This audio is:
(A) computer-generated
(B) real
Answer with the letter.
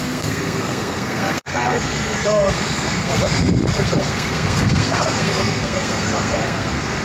A